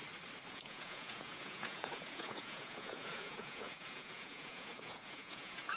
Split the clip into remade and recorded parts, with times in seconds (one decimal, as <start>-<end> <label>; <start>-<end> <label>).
0.0-0.5 recorded; 0.5-5.8 remade